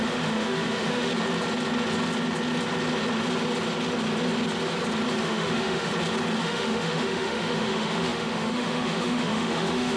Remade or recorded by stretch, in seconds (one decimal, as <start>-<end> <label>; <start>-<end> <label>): 0.0-1.1 remade; 1.1-5.2 recorded; 5.2-5.9 remade; 5.9-6.4 recorded; 6.4-10.0 remade